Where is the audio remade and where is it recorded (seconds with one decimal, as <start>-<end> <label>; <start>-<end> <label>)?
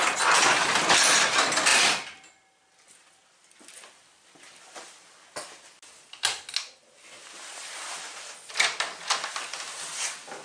0.0-10.4 recorded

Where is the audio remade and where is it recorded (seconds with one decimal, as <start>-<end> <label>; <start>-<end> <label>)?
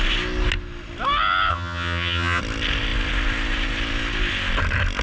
0.0-1.5 recorded; 1.5-2.4 remade; 2.4-5.0 recorded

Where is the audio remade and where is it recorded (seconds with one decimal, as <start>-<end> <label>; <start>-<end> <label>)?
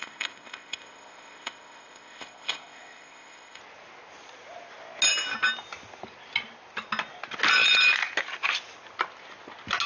0.0-3.6 remade; 3.6-9.9 recorded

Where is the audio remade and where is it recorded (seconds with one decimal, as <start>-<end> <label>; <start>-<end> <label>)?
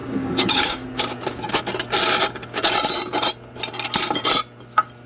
0.0-1.6 remade; 1.6-5.1 recorded